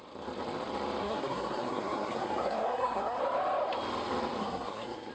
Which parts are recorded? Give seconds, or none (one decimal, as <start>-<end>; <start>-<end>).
0.0-1.0; 3.2-4.4